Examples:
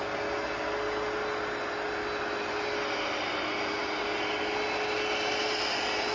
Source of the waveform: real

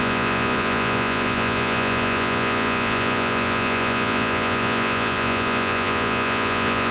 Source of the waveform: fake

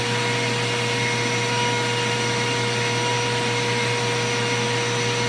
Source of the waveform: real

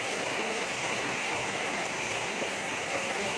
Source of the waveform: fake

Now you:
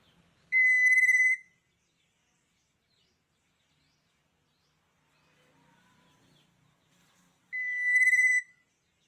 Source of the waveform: real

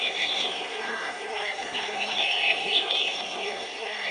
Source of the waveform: fake